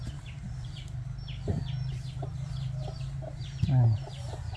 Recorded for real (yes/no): yes